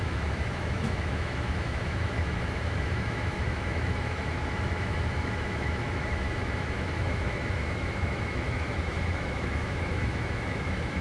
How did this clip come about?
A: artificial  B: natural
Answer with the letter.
A